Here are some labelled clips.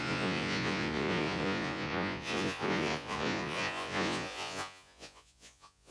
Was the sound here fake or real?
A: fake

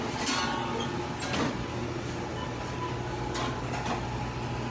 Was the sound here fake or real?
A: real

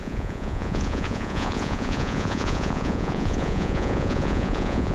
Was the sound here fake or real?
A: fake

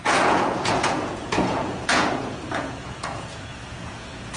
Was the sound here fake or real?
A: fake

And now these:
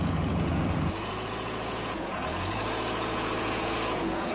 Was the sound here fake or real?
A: fake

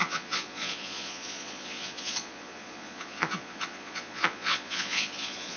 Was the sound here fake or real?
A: fake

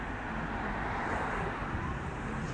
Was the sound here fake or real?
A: real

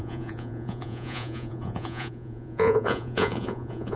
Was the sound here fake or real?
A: fake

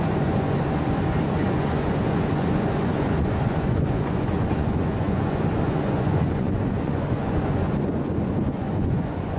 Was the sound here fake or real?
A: fake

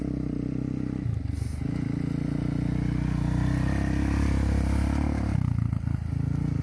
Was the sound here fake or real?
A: real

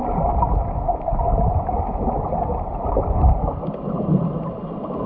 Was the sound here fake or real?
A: real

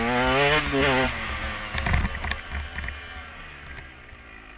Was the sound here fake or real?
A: real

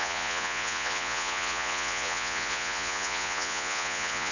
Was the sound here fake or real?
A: fake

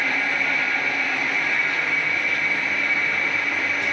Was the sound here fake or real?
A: real